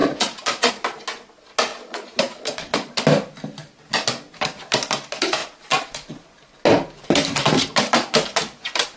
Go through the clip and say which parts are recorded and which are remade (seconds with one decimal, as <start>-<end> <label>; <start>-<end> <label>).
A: 0.0-0.7 remade; 0.7-1.7 recorded; 1.7-2.9 remade; 2.9-5.4 recorded; 5.4-6.3 remade; 6.3-9.0 recorded